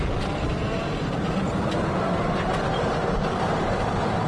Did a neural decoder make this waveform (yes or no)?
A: yes